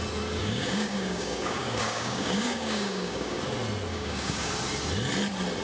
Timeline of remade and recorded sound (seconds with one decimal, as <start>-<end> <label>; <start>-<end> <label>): 0.0-0.4 recorded; 0.4-3.4 remade; 3.4-3.9 recorded; 3.9-4.5 remade; 4.5-5.6 recorded

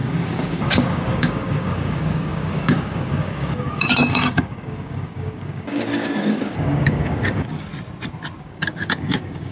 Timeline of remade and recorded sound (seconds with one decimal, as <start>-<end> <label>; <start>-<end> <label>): 0.0-7.7 remade; 7.7-8.4 recorded; 8.4-9.5 remade